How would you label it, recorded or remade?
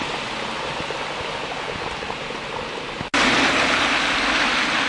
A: recorded